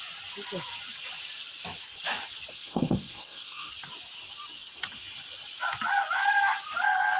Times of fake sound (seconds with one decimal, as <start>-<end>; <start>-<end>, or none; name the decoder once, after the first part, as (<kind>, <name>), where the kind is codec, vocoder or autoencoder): 2.5-3.7 (codec, SNAC)